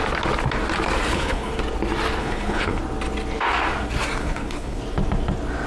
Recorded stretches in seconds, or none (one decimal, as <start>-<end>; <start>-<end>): 0.0-1.1; 1.6-2.2; 2.8-4.2; 4.8-5.7